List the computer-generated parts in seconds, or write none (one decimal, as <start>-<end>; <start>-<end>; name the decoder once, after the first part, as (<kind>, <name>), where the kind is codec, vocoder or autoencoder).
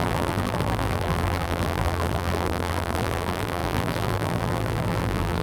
0.0-5.4 (vocoder, BigVGAN v2)